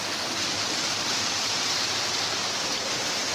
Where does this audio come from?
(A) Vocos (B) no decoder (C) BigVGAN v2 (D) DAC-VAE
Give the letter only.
B